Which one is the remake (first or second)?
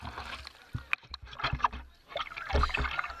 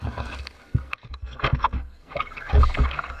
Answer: second